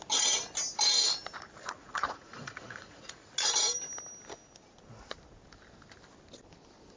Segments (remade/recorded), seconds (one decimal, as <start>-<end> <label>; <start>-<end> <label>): 0.0-1.8 recorded; 1.8-3.3 remade; 3.3-7.0 recorded